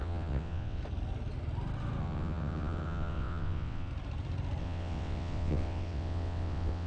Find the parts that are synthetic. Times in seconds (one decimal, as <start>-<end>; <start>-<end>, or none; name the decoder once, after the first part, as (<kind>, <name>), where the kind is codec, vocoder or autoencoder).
0.0-0.8 (vocoder, WaveNeXt); 2.0-3.9; 4.6-6.9